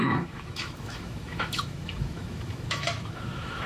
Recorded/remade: remade